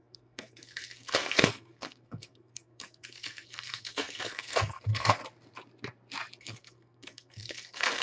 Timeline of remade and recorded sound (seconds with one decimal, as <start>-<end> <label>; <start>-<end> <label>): 0.0-5.2 remade; 5.2-6.4 recorded; 6.4-8.0 remade